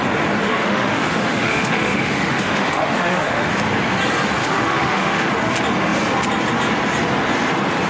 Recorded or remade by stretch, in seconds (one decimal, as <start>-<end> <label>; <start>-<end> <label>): 0.0-0.4 recorded; 0.4-3.5 remade; 3.5-4.4 recorded; 4.4-5.3 remade; 5.3-7.9 recorded